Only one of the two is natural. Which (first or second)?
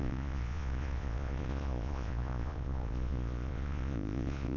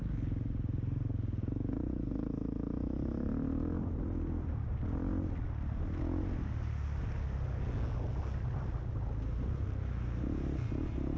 second